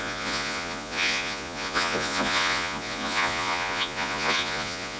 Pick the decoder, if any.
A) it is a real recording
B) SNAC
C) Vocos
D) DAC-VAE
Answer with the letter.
C